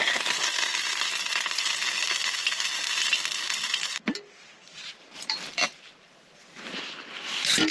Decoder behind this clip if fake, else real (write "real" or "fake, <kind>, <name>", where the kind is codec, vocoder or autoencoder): real